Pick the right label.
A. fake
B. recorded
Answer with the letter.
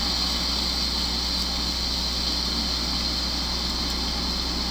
B